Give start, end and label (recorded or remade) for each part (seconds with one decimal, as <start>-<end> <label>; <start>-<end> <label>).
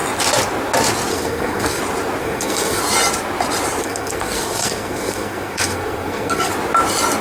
0.0-1.1 recorded; 1.1-1.8 remade; 1.8-2.2 recorded; 2.2-2.8 remade; 2.8-3.8 recorded; 3.8-6.5 remade; 6.5-7.2 recorded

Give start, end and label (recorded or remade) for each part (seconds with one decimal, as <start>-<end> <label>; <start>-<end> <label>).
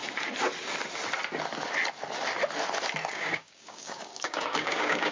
0.0-3.1 recorded; 3.1-5.1 remade